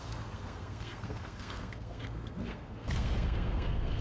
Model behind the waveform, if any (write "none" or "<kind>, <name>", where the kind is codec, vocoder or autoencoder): codec, SNAC